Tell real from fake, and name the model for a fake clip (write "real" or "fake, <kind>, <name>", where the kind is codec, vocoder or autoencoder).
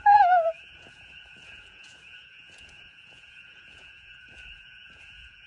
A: fake, vocoder, Vocos